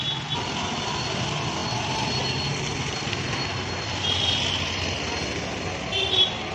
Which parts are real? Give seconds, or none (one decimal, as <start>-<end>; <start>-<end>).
0.0-6.5